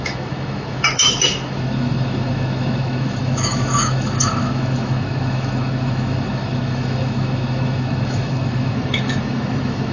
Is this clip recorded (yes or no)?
no